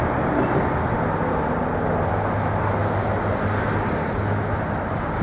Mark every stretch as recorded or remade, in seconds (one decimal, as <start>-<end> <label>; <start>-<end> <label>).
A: 0.0-5.2 recorded